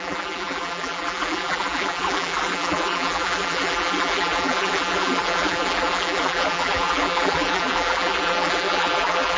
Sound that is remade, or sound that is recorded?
remade